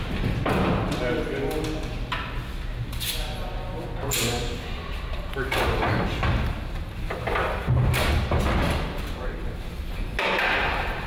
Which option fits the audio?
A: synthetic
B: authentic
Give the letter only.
B